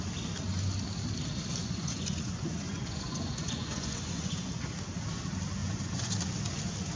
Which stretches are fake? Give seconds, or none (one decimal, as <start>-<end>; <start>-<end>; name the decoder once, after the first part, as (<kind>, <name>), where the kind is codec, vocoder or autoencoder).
1.6-4.5 (vocoder, Vocos); 5.6-6.1